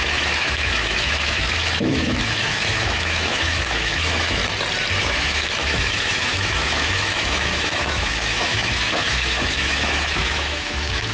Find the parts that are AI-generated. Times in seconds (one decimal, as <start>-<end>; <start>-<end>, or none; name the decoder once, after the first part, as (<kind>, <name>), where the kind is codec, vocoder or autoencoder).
0.0-4.4 (autoencoder, DAC-VAE); 5.0-11.1